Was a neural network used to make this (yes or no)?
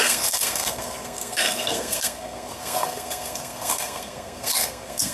yes